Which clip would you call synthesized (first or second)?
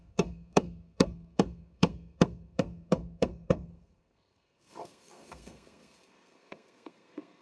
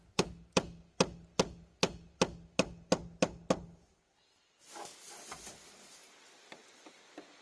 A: first